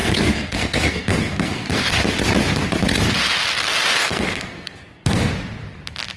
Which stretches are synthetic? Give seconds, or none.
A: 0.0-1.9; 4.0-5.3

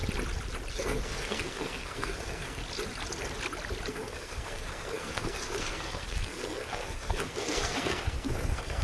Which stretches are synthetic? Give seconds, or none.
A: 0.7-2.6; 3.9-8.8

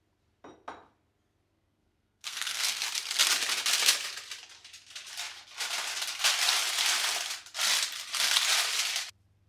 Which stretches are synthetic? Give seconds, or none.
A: 1.5-2.8

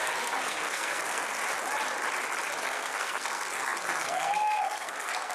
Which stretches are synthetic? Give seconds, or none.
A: 0.0-1.4; 2.6-5.3

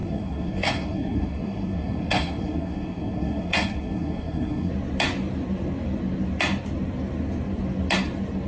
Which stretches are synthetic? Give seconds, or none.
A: 0.0-4.7